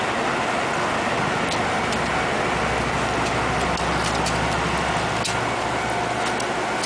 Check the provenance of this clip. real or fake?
real